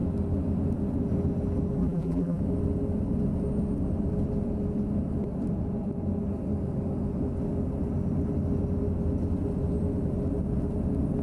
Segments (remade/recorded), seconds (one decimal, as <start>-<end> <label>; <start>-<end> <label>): 0.0-1.8 recorded; 1.8-2.4 remade; 2.4-11.2 recorded